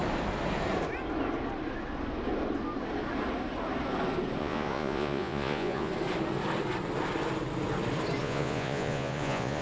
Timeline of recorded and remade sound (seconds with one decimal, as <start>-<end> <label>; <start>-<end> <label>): 0.0-4.4 recorded; 4.4-5.9 remade; 5.9-8.2 recorded; 8.2-9.6 remade